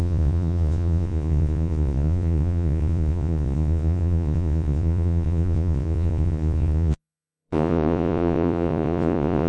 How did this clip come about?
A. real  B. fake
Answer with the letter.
B